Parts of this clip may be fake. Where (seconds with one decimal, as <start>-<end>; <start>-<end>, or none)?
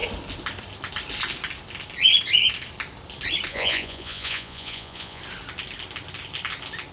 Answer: 3.5-5.2